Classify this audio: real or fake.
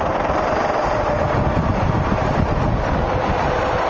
real